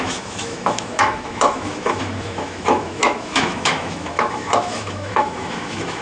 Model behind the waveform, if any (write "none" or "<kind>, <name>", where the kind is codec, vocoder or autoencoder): autoencoder, DAC-VAE